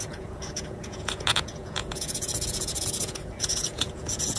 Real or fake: fake